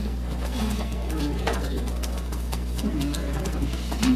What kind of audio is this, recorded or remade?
remade